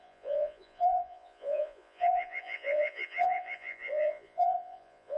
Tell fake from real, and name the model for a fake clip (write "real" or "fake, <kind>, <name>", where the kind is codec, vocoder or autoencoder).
fake, vocoder, Vocos